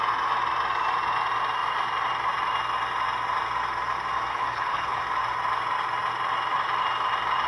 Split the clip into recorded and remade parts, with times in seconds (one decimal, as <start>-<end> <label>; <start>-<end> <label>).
0.0-4.3 recorded; 4.3-5.0 remade; 5.0-7.5 recorded